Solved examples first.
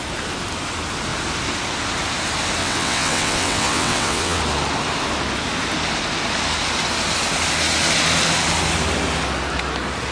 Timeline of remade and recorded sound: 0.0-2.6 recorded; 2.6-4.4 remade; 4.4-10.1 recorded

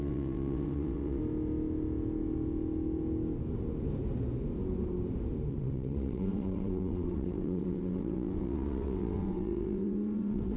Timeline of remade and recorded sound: 0.0-1.2 remade; 1.2-5.5 recorded; 5.5-10.6 remade

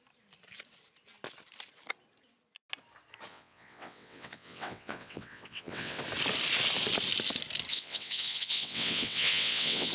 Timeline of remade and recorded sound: 0.0-3.3 recorded; 3.3-6.0 remade; 6.0-7.7 recorded; 7.7-9.9 remade

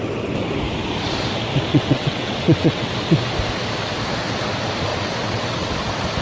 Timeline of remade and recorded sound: 0.0-1.7 recorded; 1.7-2.9 remade; 2.9-4.9 recorded; 4.9-5.7 remade; 5.7-6.2 recorded

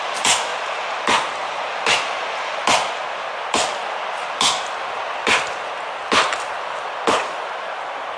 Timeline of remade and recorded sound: 0.0-8.2 recorded